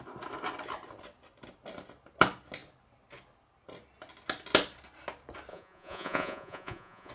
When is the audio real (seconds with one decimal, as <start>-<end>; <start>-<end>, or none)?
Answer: 0.0-5.5